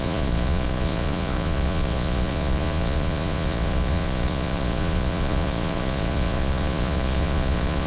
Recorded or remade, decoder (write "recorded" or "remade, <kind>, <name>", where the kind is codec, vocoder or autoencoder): remade, vocoder, Vocos